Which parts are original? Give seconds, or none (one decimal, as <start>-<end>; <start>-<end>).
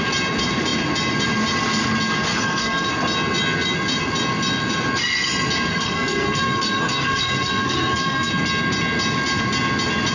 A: 0.0-2.3; 2.9-5.7; 8.3-10.1